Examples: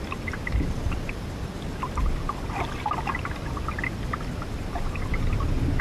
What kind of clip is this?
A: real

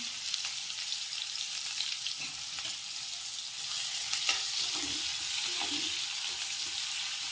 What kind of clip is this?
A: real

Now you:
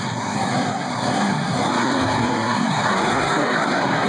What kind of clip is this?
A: fake